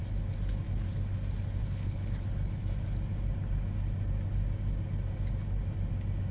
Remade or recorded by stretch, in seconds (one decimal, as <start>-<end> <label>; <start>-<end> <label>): 0.0-1.6 recorded; 1.6-2.2 remade; 2.2-6.3 recorded